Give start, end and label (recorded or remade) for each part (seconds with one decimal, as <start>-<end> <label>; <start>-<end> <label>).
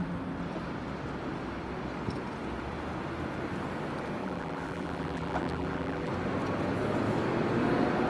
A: 0.0-4.2 recorded; 4.2-6.1 remade; 6.1-8.1 recorded